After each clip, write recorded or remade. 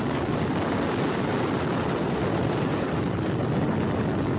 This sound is recorded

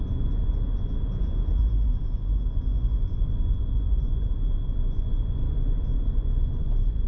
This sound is remade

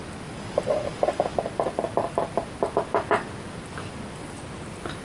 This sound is recorded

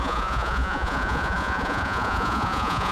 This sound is remade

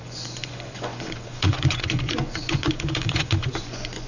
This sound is remade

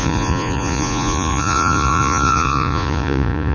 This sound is remade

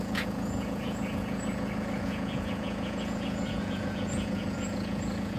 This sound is remade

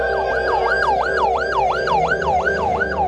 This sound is remade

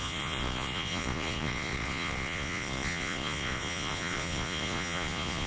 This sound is remade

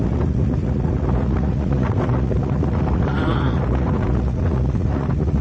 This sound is remade